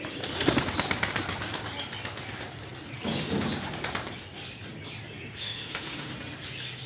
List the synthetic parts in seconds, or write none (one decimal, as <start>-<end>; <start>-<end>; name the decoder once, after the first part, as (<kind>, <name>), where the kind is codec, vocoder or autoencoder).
5.4-6.1 (autoencoder, DAC-VAE)